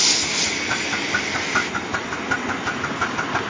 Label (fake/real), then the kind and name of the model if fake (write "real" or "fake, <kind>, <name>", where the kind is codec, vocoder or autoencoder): real